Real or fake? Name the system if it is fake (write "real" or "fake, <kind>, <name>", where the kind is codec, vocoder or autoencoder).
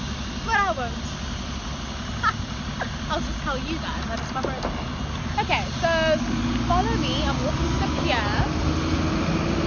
real